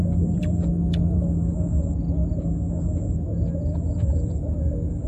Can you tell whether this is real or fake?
real